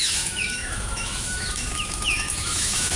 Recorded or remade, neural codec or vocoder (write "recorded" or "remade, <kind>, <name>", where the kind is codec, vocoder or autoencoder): remade, autoencoder, DAC-VAE